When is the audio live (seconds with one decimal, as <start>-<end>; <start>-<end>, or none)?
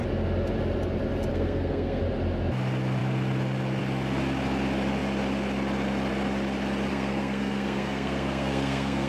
0.0-1.3; 2.0-6.9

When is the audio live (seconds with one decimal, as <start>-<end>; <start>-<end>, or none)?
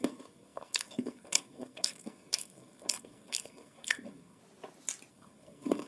4.4-5.1